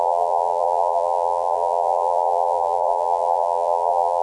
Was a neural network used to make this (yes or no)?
yes